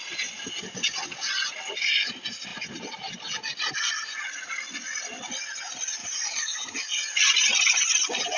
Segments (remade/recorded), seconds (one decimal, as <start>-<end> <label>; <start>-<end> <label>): 0.0-6.0 recorded; 6.0-7.2 remade; 7.2-8.4 recorded